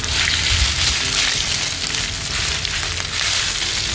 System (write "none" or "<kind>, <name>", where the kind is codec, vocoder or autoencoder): none